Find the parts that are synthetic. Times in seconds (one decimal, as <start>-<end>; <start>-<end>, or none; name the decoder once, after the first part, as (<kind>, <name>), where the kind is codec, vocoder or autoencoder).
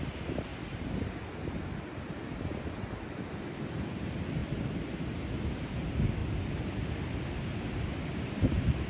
0.0-4.4 (vocoder, BigVGAN v2); 5.1-6.2; 7.6-8.9